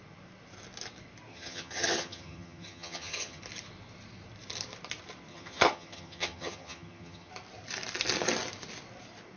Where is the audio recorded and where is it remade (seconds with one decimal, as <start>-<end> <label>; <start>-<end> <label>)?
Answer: 0.0-1.3 recorded; 1.3-3.4 remade; 3.4-5.3 recorded; 5.3-7.3 remade; 7.3-9.4 recorded